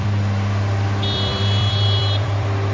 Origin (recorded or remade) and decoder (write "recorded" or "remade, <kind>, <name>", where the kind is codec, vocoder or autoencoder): remade, vocoder, BigVGAN v2